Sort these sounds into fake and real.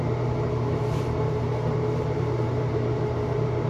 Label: fake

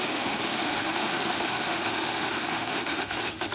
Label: fake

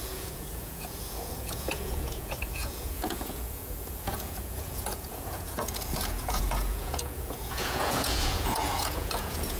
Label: fake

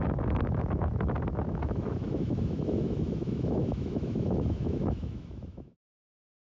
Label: fake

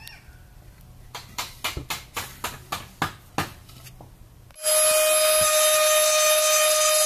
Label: real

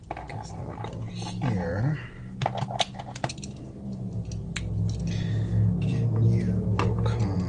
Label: real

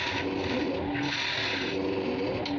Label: real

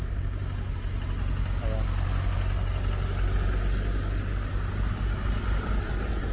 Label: real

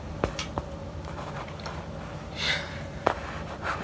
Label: real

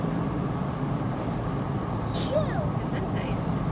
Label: real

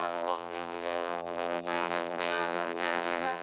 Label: fake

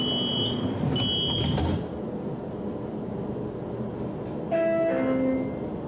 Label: real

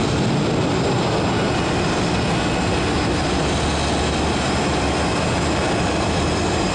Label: real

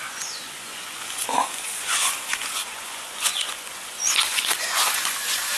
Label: fake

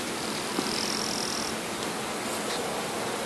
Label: real